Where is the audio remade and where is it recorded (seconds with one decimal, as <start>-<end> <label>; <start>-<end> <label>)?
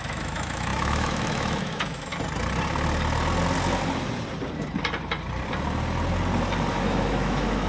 0.0-2.1 remade; 2.1-6.7 recorded; 6.7-7.7 remade